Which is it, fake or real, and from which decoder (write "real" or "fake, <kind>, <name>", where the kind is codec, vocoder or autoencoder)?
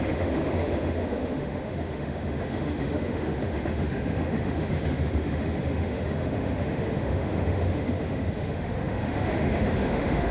fake, autoencoder, DAC-VAE